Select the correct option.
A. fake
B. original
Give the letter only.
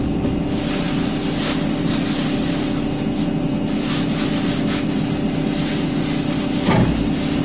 B